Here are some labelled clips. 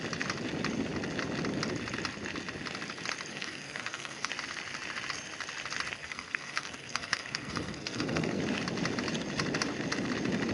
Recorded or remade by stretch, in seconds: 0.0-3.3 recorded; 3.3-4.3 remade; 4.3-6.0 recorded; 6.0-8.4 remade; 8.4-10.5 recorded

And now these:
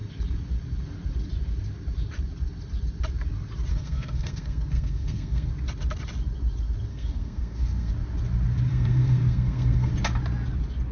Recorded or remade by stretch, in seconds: 0.0-3.7 recorded; 3.7-5.5 remade; 5.5-6.9 recorded; 6.9-7.9 remade; 7.9-8.7 recorded; 8.7-9.9 remade; 9.9-10.9 recorded

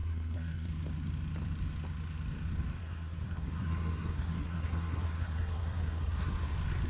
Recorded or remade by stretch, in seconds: 0.0-0.7 remade; 0.7-2.8 recorded; 2.8-6.5 remade; 6.5-6.9 recorded

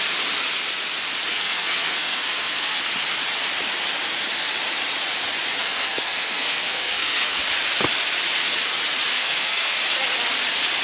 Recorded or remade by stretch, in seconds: 0.0-1.3 recorded; 1.3-2.8 remade; 2.8-5.6 recorded; 5.6-7.4 remade; 7.4-9.1 recorded; 9.1-9.8 remade; 9.8-10.8 recorded

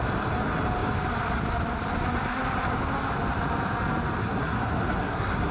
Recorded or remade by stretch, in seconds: 0.0-4.2 recorded; 4.2-5.5 remade

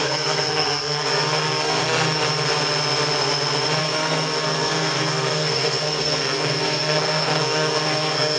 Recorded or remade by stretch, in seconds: 0.0-1.8 remade; 1.8-3.8 recorded; 3.8-8.4 remade